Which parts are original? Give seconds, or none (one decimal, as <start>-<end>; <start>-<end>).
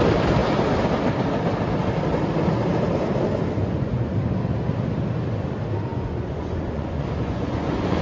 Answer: 0.0-3.6; 4.1-5.9